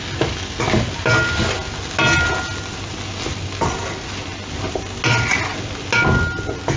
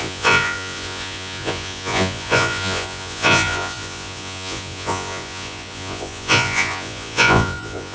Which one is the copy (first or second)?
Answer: second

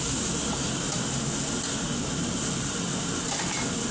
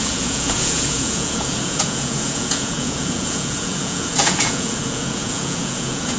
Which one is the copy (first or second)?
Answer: second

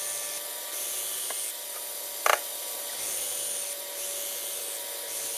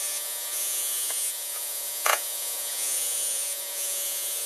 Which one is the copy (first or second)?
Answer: second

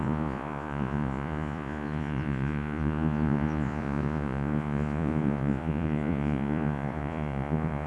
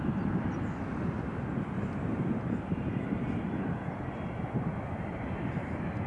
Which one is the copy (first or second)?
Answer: first